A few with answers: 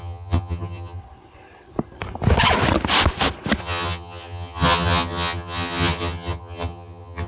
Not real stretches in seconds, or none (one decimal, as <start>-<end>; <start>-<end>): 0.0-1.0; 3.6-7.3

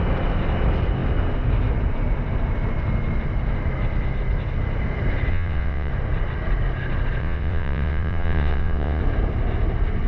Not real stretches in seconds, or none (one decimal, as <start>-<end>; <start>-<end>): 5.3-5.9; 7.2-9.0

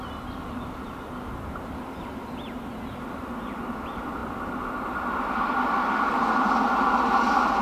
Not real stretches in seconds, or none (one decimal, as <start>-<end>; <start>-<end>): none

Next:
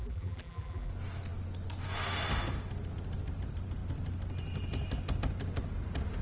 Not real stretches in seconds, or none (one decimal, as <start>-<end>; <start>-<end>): 0.0-0.9